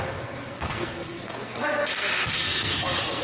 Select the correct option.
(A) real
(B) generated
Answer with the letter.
B